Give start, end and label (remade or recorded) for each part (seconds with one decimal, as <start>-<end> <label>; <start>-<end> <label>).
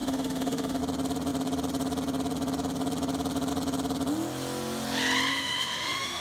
0.0-0.8 remade; 0.8-5.3 recorded; 5.3-6.2 remade